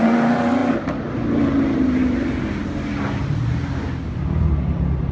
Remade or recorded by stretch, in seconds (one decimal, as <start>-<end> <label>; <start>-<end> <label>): 0.0-5.1 recorded

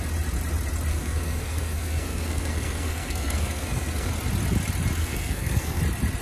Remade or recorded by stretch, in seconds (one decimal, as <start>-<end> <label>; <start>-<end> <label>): 0.0-0.9 recorded; 0.9-4.1 remade; 4.1-5.0 recorded; 5.0-5.8 remade; 5.8-6.2 recorded

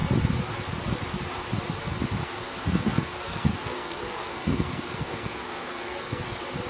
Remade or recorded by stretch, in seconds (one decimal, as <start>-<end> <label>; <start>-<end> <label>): 0.0-2.2 recorded; 2.2-6.2 remade; 6.2-6.7 recorded

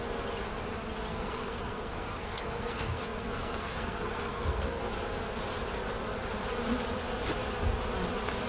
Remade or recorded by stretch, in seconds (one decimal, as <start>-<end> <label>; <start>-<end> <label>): 0.0-1.1 recorded; 1.1-4.8 remade; 4.8-8.5 recorded

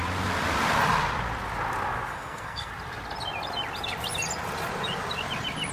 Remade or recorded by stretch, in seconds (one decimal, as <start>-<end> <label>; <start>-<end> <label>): 0.0-2.1 recorded; 2.1-2.7 remade; 2.7-5.7 recorded

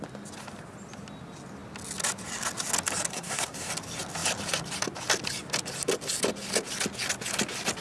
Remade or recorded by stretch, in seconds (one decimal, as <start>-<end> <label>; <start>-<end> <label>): 0.0-3.1 recorded; 3.1-3.7 remade; 3.7-7.8 recorded